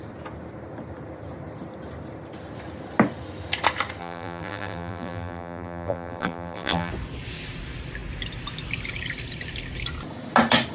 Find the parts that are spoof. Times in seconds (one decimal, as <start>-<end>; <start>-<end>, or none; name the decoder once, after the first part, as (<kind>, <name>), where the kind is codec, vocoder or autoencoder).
4.0-6.9 (vocoder, BigVGAN v2)